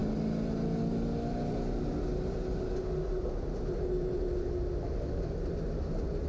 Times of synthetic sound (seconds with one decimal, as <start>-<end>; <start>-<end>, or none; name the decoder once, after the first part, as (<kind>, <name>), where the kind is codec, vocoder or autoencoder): none